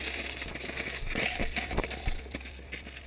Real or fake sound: real